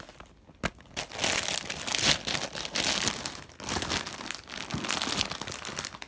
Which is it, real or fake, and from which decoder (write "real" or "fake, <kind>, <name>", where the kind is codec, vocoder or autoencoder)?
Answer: real